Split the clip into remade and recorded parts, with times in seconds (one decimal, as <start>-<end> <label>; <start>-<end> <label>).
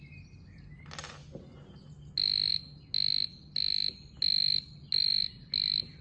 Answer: 0.0-6.0 recorded